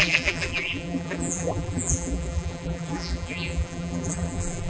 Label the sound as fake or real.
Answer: fake